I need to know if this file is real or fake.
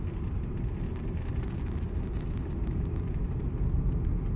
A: real